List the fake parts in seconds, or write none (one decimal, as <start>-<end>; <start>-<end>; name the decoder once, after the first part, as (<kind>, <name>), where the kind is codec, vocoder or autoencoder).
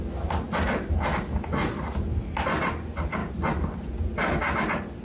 none